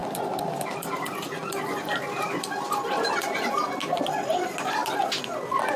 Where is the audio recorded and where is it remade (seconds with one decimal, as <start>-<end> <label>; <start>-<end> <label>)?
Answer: 0.0-5.8 recorded